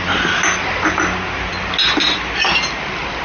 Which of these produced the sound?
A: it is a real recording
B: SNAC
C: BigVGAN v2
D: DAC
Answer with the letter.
A